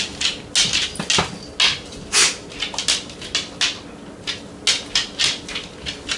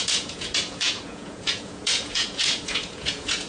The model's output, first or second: second